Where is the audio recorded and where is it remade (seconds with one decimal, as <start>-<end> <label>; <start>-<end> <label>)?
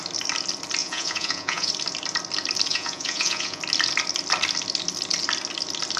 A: 0.0-0.8 recorded; 0.8-1.7 remade; 1.7-2.7 recorded; 2.7-3.6 remade; 3.6-6.0 recorded